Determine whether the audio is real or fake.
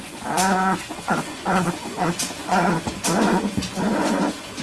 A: fake